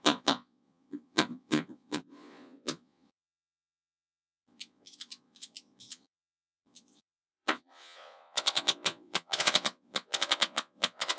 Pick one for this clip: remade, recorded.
remade